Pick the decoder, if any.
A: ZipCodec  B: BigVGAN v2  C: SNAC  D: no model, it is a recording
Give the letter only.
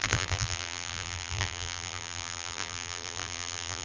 B